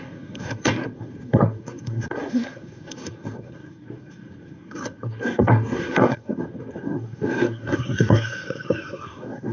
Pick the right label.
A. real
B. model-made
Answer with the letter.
B